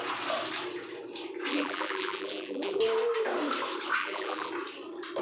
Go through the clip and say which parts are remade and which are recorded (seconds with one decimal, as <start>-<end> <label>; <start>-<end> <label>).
0.0-1.5 recorded; 1.5-2.8 remade; 2.8-4.0 recorded; 4.0-4.5 remade; 4.5-5.2 recorded